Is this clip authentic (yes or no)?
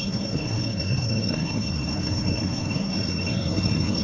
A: no